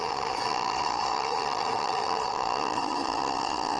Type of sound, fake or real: fake